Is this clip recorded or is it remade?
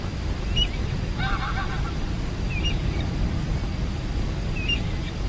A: recorded